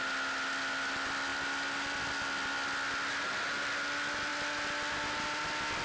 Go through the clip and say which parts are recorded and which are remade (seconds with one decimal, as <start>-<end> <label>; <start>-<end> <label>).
0.0-5.8 recorded